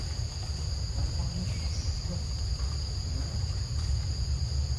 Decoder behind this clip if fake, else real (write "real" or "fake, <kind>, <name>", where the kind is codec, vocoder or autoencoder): real